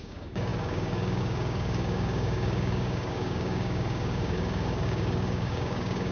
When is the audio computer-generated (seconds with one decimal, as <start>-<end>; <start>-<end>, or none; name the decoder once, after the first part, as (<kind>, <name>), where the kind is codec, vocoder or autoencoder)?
0.0-6.1 (codec, DAC)